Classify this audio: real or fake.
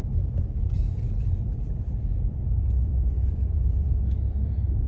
fake